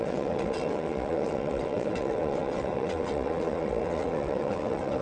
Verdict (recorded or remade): remade